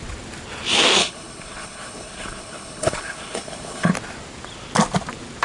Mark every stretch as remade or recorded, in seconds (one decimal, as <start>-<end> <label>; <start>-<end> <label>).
0.0-1.0 recorded; 1.0-3.9 remade; 3.9-5.4 recorded